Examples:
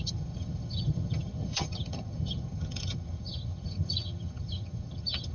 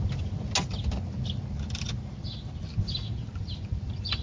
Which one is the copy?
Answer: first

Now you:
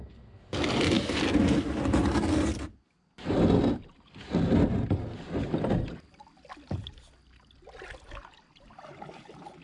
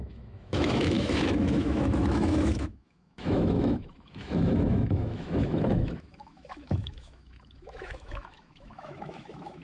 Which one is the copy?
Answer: second